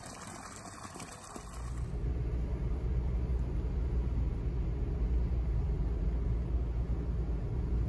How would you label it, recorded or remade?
recorded